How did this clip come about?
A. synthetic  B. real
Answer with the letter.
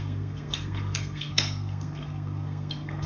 A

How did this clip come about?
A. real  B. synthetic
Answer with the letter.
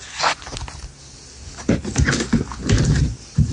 A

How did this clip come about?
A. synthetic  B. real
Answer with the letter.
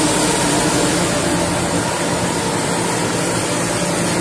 B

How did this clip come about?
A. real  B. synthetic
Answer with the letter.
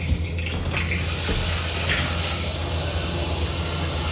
A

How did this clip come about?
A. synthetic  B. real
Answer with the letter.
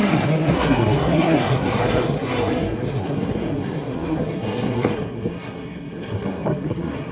A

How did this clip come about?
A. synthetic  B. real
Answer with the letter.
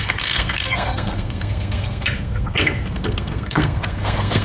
A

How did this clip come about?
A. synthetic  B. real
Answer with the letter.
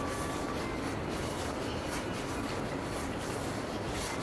B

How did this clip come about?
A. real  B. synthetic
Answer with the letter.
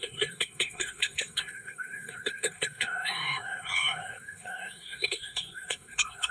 B